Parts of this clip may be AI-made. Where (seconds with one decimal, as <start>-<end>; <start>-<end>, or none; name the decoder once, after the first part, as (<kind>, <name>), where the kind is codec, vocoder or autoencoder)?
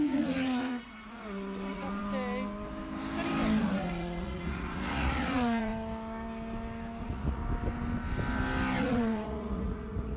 0.0-2.0 (vocoder, Vocos); 3.6-5.7; 7.0-7.4; 8.8-10.2